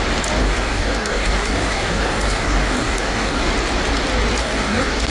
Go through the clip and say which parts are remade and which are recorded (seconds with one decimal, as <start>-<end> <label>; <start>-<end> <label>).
0.0-0.4 recorded; 0.4-3.5 remade; 3.5-4.4 recorded; 4.4-5.1 remade